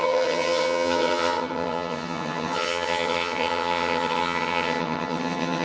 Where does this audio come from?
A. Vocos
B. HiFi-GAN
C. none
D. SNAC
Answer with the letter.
B